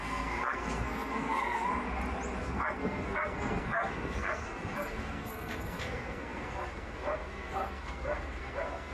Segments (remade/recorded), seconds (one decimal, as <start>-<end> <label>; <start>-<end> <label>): 0.0-1.7 remade; 1.7-2.4 recorded; 2.4-8.9 remade